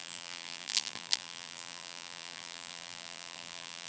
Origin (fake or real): fake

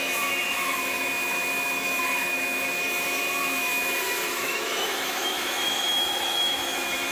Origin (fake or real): fake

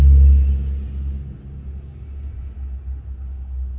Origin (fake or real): real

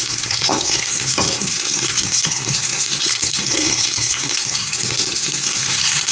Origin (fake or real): fake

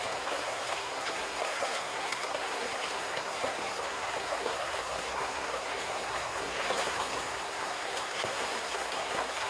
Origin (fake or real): fake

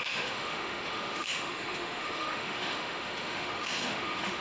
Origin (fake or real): fake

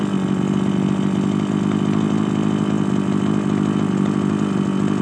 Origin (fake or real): real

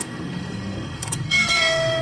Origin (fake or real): fake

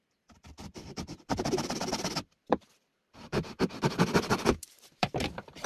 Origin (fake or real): fake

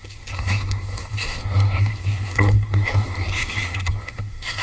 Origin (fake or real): fake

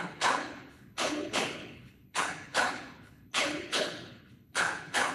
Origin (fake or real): fake